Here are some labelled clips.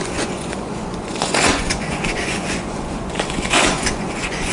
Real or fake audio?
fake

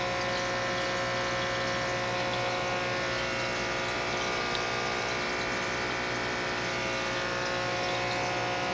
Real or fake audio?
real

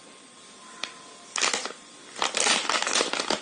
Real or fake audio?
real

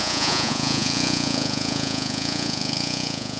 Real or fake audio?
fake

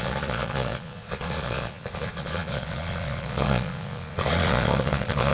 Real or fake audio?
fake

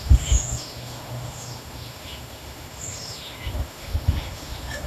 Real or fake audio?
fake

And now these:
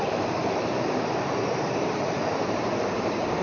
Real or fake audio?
fake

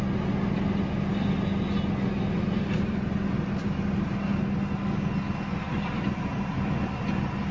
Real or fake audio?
real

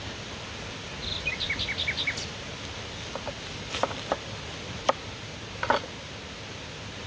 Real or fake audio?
real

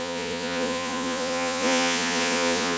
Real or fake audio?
fake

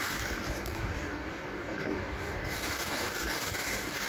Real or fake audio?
fake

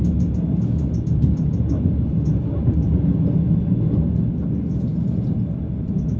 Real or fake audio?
real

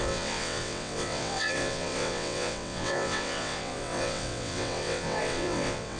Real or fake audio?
fake